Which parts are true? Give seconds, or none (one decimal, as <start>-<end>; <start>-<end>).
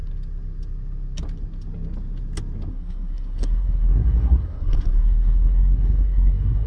0.0-2.7